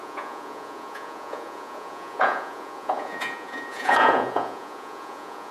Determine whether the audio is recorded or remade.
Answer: remade